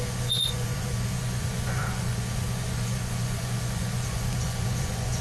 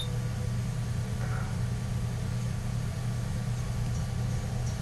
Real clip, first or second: second